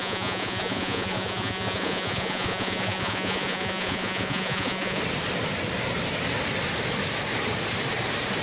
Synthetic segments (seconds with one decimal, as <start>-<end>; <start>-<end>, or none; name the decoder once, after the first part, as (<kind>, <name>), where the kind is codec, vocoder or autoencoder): 0.0-5.0 (vocoder, Vocos)